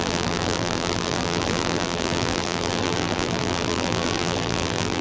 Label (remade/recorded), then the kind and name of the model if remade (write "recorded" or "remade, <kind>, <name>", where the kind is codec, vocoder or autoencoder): remade, vocoder, BigVGAN v2